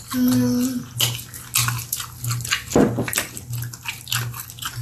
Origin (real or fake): real